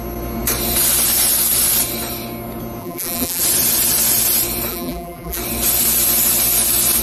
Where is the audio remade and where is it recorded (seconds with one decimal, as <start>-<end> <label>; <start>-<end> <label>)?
0.0-2.8 recorded; 2.8-3.4 remade; 3.4-4.7 recorded; 4.7-5.4 remade; 5.4-7.0 recorded